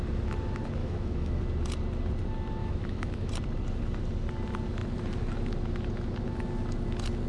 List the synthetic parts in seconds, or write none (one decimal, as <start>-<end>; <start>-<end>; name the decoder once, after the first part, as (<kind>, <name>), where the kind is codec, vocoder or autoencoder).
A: 0.8-1.4 (autoencoder, DAC-VAE); 2.6-3.3